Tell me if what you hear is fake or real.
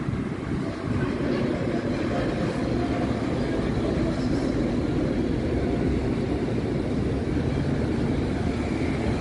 real